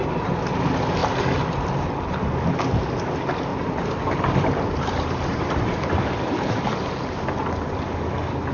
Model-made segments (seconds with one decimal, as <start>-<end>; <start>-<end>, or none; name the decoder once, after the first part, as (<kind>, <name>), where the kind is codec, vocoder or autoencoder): 0.0-0.5 (vocoder, BigVGAN v2); 3.5-7.2